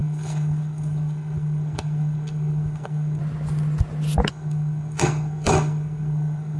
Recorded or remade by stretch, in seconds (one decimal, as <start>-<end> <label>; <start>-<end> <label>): 0.0-3.2 remade; 3.2-4.3 recorded; 4.3-6.6 remade